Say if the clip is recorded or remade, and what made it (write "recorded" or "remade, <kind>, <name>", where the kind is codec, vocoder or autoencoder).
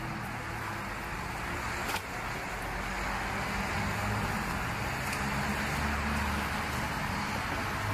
recorded